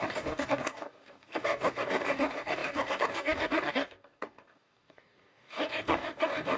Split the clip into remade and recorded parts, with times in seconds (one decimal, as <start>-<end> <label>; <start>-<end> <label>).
0.0-6.6 remade